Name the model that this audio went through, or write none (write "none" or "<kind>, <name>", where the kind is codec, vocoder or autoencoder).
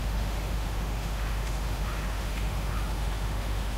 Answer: autoencoder, DAC-VAE